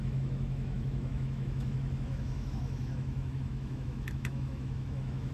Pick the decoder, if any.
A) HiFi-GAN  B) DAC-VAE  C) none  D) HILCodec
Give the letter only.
B